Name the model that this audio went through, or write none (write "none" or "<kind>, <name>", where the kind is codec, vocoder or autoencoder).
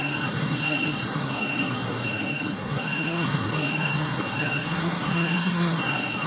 codec, SNAC